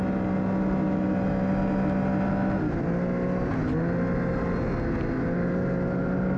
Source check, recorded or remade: recorded